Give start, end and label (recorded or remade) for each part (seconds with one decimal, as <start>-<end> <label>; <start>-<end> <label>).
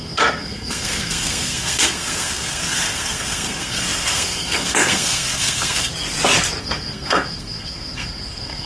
0.0-5.9 remade; 5.9-6.6 recorded; 6.6-8.7 remade